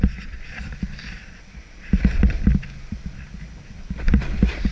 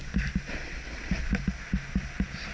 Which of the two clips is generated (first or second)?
first